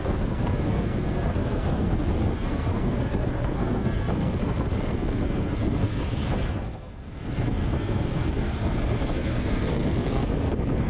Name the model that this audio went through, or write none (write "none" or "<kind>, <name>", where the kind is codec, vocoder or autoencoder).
codec, SNAC